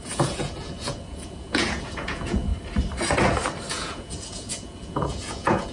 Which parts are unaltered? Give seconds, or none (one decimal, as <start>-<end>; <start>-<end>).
2.5-3.7